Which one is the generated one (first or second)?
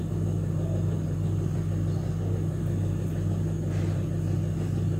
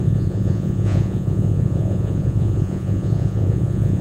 second